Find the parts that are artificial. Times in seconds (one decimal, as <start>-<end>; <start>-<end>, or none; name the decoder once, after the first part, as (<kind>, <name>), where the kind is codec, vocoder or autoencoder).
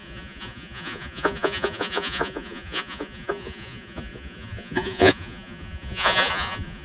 0.0-6.8 (vocoder, Vocos)